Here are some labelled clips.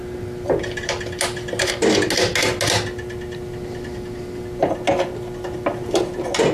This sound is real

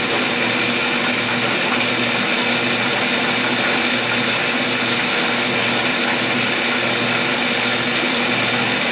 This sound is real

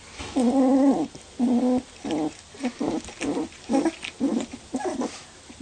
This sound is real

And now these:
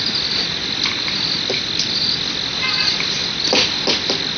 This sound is real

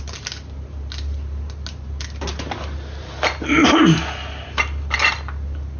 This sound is real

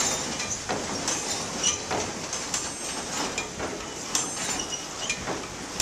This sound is real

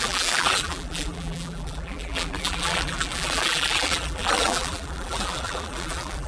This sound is fake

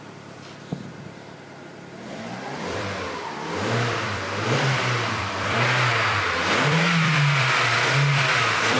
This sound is fake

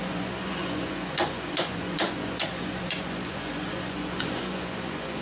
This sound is fake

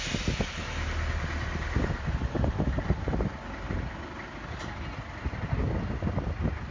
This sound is real